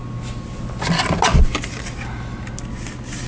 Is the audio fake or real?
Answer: real